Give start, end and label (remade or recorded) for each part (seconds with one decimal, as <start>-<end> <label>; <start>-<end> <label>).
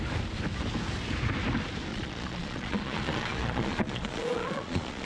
0.0-1.9 recorded; 1.9-5.1 remade